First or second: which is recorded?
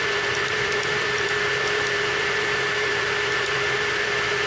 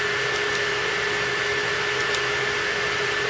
second